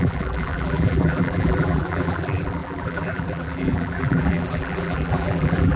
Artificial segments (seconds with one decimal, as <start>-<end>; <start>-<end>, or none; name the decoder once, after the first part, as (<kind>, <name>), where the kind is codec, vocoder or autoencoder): 0.0-5.8 (vocoder, BigVGAN v2)